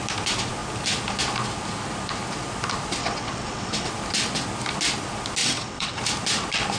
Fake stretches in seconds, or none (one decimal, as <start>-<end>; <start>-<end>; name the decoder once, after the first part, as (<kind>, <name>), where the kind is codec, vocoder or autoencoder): 3.0-3.9 (vocoder, WaveNeXt); 5.4-6.0